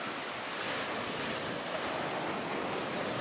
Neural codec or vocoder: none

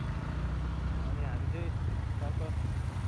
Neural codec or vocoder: none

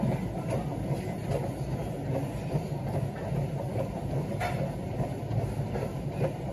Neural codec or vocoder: none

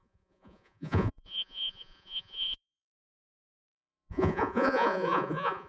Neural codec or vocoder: vocoder, Vocos